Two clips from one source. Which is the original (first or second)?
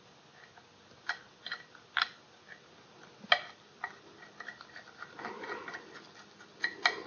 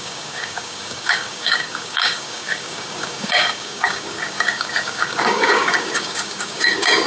first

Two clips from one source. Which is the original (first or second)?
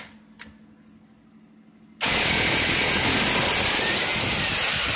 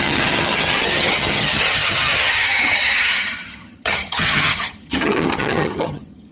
first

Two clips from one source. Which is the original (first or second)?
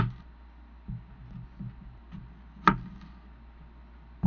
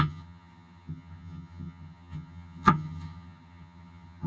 first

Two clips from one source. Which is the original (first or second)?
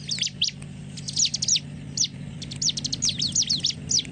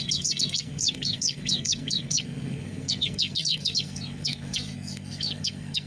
first